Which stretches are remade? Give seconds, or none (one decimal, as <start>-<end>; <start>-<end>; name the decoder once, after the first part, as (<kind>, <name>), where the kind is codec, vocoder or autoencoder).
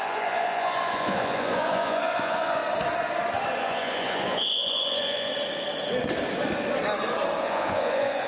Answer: 0.0-2.6 (vocoder, Vocos); 3.6-5.3; 7.4-8.3